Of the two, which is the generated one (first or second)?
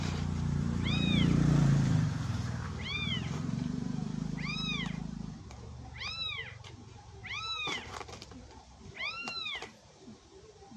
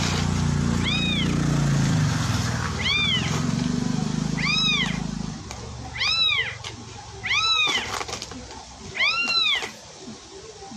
first